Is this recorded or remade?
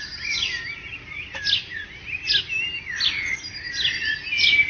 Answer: recorded